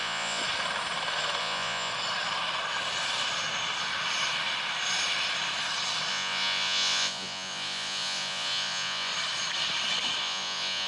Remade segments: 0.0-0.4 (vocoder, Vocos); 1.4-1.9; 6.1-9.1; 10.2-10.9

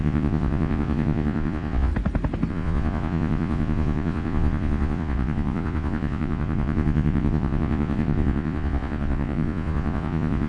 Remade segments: 0.0-1.9 (vocoder, Vocos); 2.5-10.5

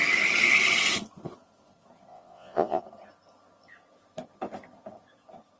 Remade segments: 2.1-2.8 (vocoder, Vocos)